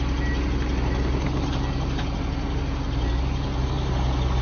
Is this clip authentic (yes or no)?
yes